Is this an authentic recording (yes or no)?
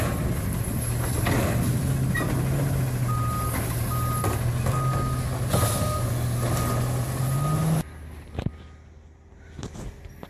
yes